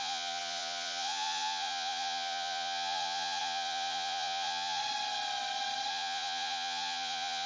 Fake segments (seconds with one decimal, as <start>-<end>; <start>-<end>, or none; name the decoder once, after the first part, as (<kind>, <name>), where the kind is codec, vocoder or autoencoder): 0.0-4.8 (vocoder, Vocos); 5.9-7.5